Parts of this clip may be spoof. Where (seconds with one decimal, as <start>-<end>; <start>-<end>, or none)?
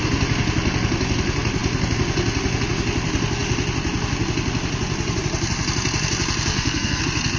6.5-7.0